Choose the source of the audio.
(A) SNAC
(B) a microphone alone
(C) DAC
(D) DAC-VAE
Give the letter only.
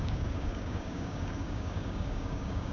C